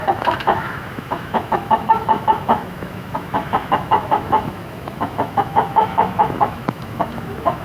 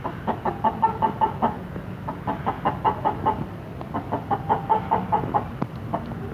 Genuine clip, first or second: second